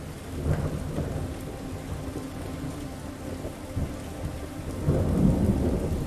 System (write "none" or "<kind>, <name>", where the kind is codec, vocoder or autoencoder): none